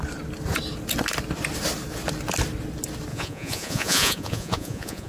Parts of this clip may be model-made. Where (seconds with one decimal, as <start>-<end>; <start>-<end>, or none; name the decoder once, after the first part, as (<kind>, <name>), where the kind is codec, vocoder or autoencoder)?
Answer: 3.1-5.1 (vocoder, Vocos)